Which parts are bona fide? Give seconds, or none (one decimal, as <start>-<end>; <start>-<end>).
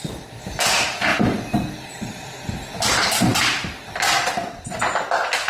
0.0-5.5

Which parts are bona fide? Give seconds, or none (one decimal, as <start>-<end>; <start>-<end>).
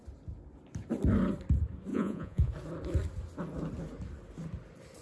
0.0-1.9; 2.5-5.0